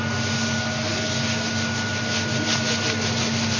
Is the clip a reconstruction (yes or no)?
no